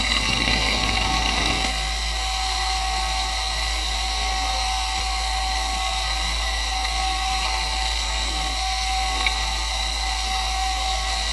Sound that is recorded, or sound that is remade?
remade